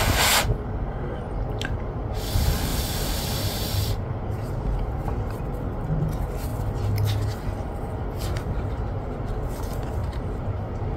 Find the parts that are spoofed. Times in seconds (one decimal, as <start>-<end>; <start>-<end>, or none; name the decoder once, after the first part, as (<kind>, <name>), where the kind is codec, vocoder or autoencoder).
2.7-5.4 (vocoder, BigVGAN v2); 10.0-11.0